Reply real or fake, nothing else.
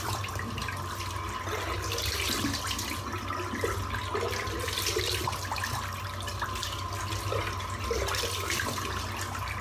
real